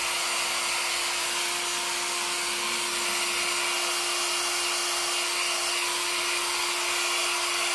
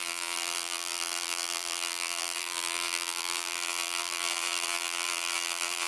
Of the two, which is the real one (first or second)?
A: first